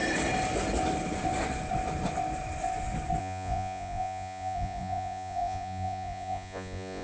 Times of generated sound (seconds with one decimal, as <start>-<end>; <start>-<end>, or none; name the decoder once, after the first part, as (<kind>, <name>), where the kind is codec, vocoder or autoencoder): 3.2-7.0 (vocoder, Vocos)